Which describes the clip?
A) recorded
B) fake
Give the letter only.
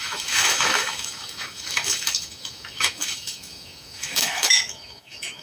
B